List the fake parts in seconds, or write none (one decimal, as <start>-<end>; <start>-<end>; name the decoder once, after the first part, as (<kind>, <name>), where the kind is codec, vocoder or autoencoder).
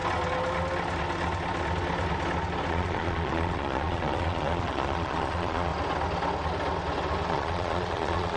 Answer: 2.7-5.7 (vocoder, Vocos); 7.3-8.4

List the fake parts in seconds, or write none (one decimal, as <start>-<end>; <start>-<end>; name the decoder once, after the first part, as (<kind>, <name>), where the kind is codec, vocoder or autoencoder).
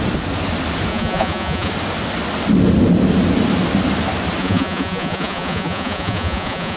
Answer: 0.9-1.7 (vocoder, Vocos); 4.4-6.8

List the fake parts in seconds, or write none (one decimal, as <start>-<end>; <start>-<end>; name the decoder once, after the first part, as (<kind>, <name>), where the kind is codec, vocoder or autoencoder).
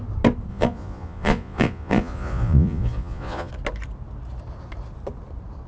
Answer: 0.5-3.5 (vocoder, Vocos)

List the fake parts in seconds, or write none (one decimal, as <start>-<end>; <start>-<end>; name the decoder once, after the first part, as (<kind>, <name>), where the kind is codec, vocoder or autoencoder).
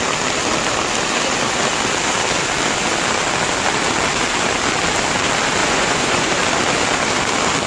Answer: 5.6-6.3 (vocoder, Vocos)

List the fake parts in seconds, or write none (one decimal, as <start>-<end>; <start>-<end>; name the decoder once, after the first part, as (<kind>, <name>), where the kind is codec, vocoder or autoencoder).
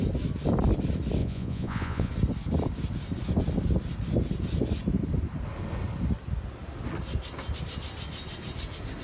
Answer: 1.2-2.1 (vocoder, Vocos)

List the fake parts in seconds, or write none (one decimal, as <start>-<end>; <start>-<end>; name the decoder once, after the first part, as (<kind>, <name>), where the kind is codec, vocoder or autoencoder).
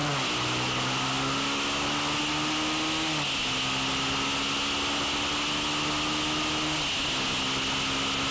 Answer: none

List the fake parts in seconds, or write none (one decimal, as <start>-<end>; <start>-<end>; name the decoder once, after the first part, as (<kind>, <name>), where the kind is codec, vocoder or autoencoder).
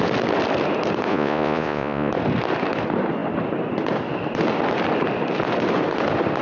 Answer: 1.1-2.1 (vocoder, Vocos)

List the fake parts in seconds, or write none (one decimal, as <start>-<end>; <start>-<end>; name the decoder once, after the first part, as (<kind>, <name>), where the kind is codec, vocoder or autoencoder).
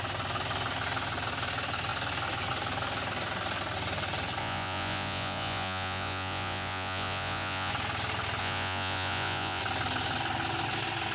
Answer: 4.4-7.7 (vocoder, Vocos); 8.4-9.6